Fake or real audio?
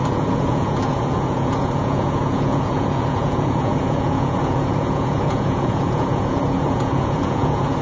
fake